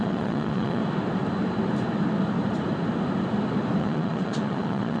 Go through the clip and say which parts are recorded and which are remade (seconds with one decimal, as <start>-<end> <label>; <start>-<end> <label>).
0.0-0.8 remade; 0.8-3.8 recorded; 3.8-5.0 remade